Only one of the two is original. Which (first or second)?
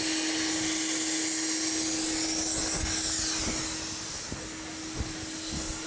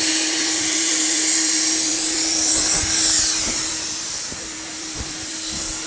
first